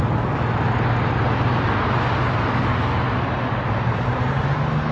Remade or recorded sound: recorded